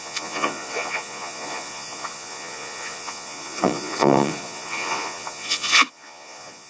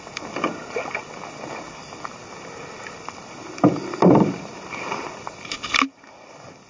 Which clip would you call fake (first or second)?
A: first